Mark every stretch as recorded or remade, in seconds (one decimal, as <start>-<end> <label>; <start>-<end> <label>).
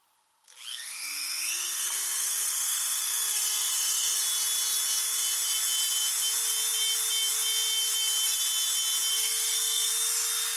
0.0-0.7 recorded; 0.7-4.2 remade; 4.2-9.1 recorded; 9.1-9.9 remade; 9.9-10.6 recorded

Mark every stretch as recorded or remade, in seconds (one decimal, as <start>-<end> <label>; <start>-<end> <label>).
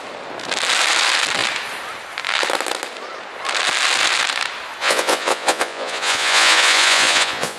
0.0-4.8 recorded; 4.8-7.6 remade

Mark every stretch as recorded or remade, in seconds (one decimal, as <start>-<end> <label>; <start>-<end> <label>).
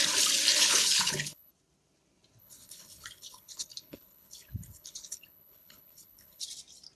0.0-0.5 recorded; 0.5-1.5 remade; 1.5-2.4 recorded; 2.4-6.4 remade; 6.4-7.0 recorded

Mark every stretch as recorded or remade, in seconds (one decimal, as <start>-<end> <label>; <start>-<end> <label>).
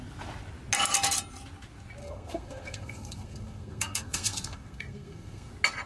0.0-2.0 recorded; 2.0-5.5 remade; 5.5-5.9 recorded